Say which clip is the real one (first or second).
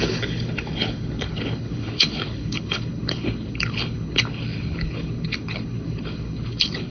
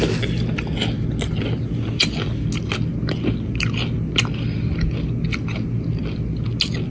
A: second